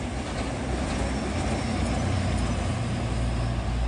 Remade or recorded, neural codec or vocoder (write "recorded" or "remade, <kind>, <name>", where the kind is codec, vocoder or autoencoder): recorded